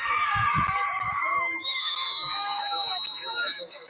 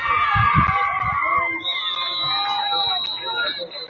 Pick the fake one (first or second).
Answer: first